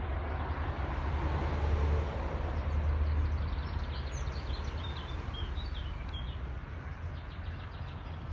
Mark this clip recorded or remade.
recorded